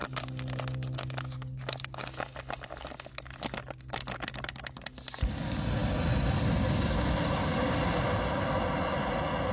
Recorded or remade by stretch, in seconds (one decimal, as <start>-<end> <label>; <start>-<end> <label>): 0.0-9.5 recorded